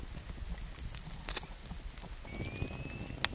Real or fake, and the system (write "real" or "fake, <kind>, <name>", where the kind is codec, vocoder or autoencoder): real